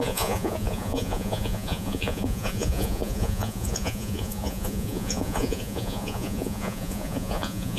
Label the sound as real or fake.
fake